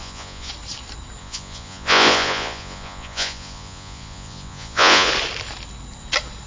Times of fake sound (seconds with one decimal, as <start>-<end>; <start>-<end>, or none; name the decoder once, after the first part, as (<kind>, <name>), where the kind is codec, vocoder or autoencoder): 0.0-0.5 (vocoder, Vocos); 1.2-5.1